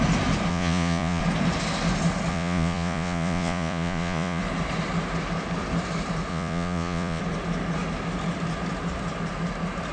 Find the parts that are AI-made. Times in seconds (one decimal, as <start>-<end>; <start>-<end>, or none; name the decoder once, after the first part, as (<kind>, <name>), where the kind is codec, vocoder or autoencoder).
0.5-1.2 (vocoder, Vocos); 2.3-4.4; 6.3-7.2